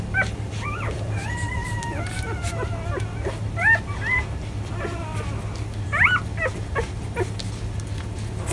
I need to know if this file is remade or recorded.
recorded